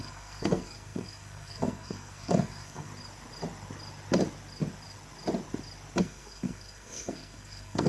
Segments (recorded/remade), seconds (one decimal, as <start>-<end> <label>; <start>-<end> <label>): 0.0-2.9 remade; 2.9-6.0 recorded; 6.0-7.9 remade

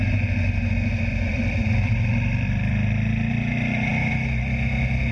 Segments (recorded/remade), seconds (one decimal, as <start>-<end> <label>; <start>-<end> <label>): 0.0-1.1 recorded; 1.1-3.3 remade; 3.3-5.1 recorded

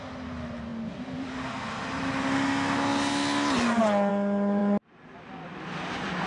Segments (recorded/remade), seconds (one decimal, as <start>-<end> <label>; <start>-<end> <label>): 0.0-6.3 recorded

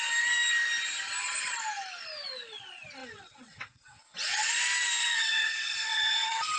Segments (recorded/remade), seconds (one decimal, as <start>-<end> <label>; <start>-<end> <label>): 0.0-3.0 recorded; 3.0-4.5 remade; 4.5-5.0 recorded; 5.0-6.6 remade

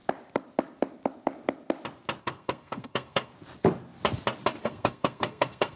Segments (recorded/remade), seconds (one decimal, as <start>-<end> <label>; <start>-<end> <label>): 0.0-2.2 recorded; 2.2-3.3 remade; 3.3-4.6 recorded; 4.6-5.8 remade